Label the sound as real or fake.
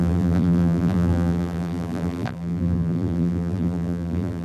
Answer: fake